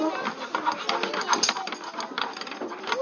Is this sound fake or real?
real